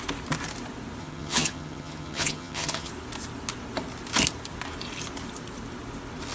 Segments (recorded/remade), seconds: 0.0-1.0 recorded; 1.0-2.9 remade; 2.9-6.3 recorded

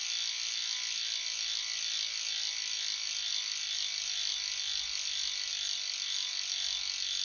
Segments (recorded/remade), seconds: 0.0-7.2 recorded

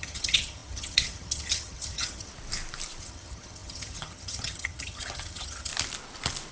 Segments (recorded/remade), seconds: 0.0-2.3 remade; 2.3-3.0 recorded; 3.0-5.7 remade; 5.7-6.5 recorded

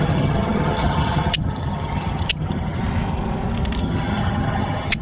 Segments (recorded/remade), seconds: 0.0-2.8 remade; 2.8-3.8 recorded; 3.8-5.0 remade

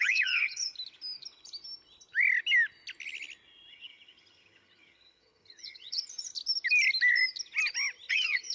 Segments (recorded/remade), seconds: 0.0-0.7 remade; 0.7-3.7 recorded; 3.7-6.3 remade; 6.3-8.1 recorded; 8.1-8.5 remade